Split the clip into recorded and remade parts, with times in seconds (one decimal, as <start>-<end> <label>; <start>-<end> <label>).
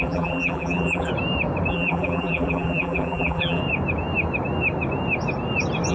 0.0-1.1 remade; 1.1-1.7 recorded; 1.7-3.6 remade; 3.6-5.9 recorded